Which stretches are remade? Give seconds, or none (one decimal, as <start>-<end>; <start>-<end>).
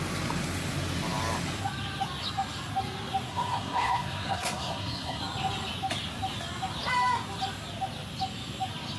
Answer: 3.3-5.2